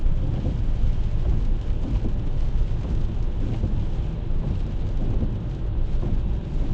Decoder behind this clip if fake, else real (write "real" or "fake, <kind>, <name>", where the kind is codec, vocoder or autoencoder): real